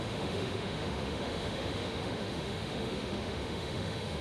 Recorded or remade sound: remade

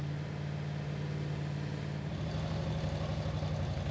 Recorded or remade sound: recorded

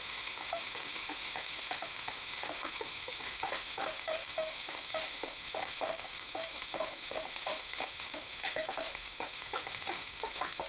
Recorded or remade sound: remade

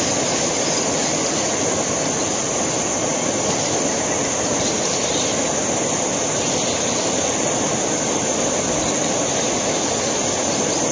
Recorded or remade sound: recorded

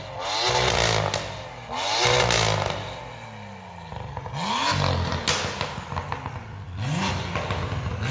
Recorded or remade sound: recorded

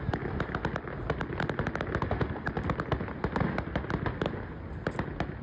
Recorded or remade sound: recorded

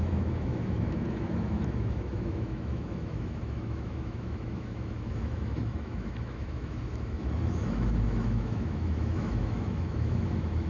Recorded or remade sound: remade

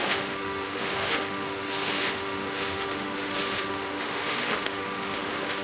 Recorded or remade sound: remade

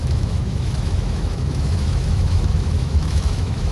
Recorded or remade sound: remade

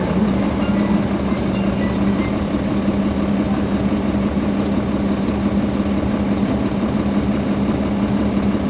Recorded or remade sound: recorded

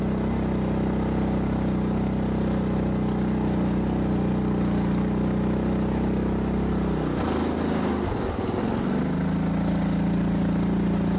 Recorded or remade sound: recorded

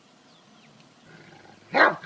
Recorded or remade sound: recorded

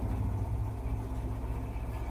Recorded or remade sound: recorded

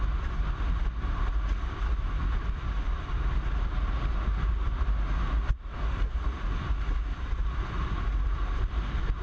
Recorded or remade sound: recorded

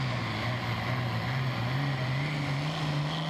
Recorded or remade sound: recorded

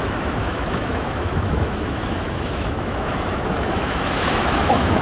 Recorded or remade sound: remade